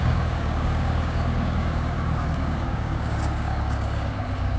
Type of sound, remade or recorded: remade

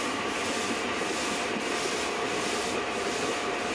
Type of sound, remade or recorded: recorded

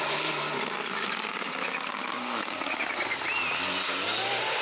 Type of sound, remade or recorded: recorded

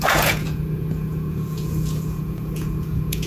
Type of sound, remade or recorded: remade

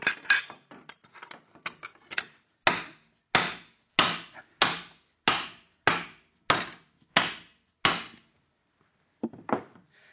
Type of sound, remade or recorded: recorded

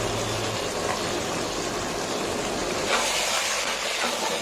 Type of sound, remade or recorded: recorded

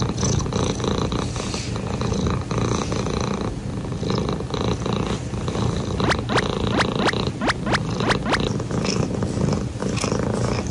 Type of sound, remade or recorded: recorded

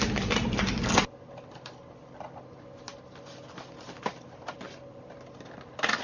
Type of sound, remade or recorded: recorded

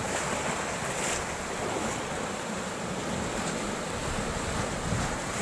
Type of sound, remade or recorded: recorded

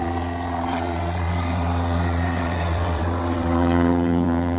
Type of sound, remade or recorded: remade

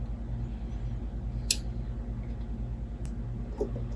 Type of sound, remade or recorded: recorded